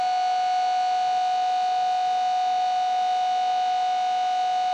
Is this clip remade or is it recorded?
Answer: recorded